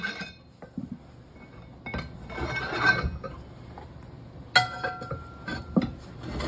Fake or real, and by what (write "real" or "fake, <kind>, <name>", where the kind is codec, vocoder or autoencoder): real